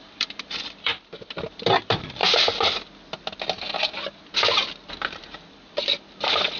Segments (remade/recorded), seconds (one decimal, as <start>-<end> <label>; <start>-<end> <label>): 0.0-0.9 remade; 0.9-1.5 recorded; 1.5-2.2 remade; 2.2-5.5 recorded; 5.5-6.6 remade